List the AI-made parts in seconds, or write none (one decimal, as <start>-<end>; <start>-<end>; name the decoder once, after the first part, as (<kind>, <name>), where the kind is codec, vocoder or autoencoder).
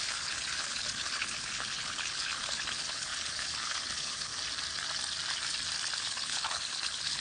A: 0.0-4.3 (codec, HILCodec); 6.0-7.2